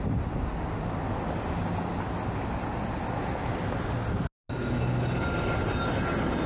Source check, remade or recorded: recorded